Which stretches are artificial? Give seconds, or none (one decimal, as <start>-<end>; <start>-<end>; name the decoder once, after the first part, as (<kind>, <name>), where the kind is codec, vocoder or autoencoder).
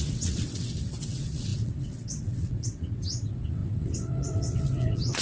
0.0-5.2 (vocoder, WaveNeXt)